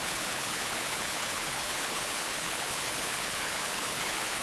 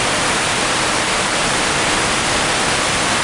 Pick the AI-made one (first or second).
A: first